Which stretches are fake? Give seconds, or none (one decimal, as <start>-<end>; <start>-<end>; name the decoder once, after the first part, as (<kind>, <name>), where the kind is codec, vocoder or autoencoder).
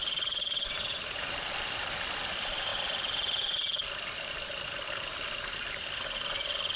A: 0.0-1.2 (vocoder, BigVGAN v2); 2.3-2.7